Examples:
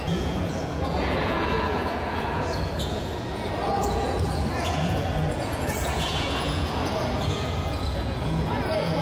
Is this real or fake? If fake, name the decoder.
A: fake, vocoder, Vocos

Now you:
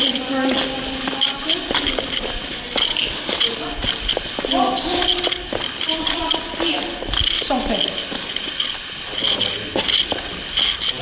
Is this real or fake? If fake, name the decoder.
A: real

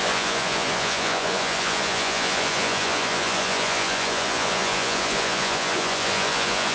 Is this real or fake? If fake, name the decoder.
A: fake, vocoder, Vocos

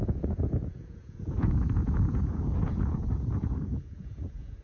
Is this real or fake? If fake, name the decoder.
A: fake, vocoder, Vocos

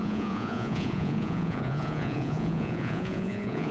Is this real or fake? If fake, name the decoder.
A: fake, vocoder, Vocos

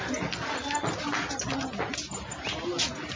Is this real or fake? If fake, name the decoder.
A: real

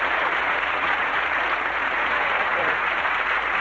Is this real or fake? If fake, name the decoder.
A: fake, vocoder, Vocos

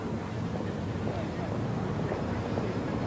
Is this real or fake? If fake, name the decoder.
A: real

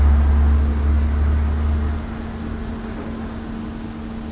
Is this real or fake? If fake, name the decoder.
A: real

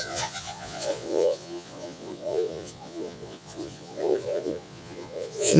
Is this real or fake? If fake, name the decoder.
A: fake, vocoder, Vocos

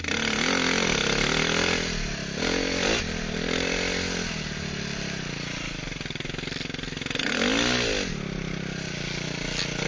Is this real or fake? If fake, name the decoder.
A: real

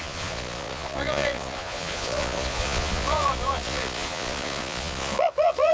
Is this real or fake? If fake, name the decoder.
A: fake, vocoder, Vocos